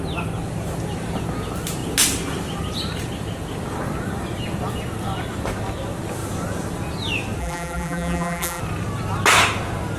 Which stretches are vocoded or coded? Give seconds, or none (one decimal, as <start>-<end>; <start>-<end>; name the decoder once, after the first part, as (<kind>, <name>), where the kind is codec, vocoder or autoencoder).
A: 7.4-8.6 (vocoder, BigVGAN v2)